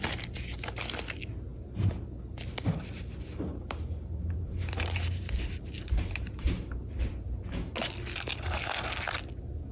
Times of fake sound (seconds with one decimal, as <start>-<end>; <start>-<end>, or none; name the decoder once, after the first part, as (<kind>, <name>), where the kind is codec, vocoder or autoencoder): 1.5-2.2 (vocoder, BigVGAN v2); 3.5-6.5